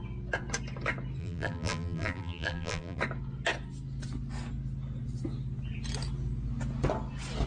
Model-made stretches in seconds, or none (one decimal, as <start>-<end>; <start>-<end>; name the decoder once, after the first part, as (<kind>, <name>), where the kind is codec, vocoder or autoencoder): 1.2-3.0 (vocoder, BigVGAN v2)